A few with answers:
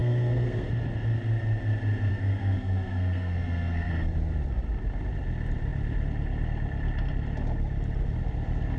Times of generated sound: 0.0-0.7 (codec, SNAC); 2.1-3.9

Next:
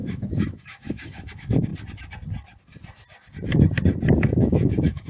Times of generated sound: 0.0-1.7 (autoencoder, DAC-VAE); 4.3-5.1

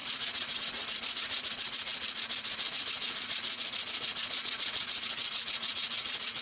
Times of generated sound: 0.0-6.4 (vocoder, Vocos)

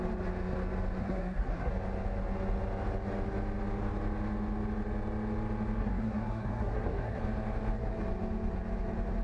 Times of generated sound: 1.0-1.7 (codec, SNAC); 5.8-7.2

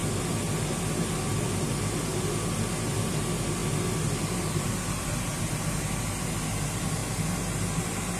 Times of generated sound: none

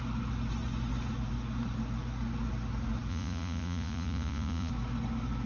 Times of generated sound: 3.1-4.7 (vocoder, Vocos)